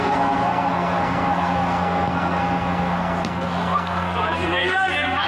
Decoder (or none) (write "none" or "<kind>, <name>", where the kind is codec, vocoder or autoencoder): codec, SNAC